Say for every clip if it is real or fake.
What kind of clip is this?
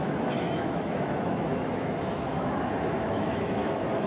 fake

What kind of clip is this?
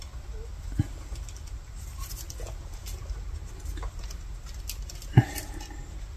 real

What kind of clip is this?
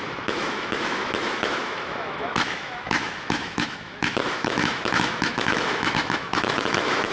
fake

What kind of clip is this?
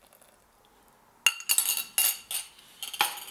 real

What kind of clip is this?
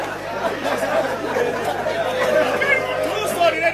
real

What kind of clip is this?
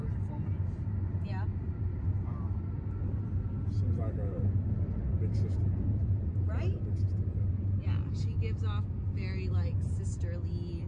real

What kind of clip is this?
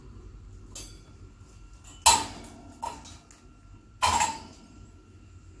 real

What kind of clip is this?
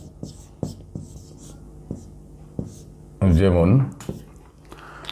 real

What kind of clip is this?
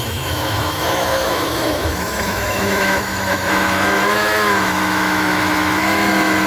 fake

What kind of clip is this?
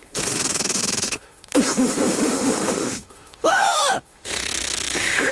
fake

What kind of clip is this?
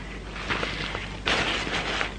real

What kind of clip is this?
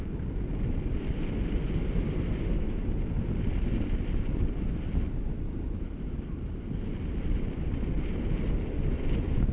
real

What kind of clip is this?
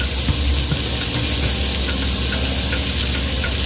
real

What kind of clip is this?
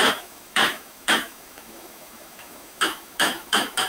fake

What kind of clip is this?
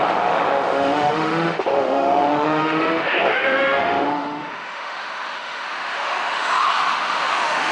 fake